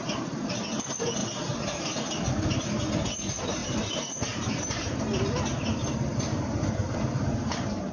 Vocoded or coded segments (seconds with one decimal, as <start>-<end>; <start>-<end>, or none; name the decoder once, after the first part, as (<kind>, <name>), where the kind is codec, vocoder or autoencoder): 3.6-5.0 (vocoder, BigVGAN v2); 6.3-7.9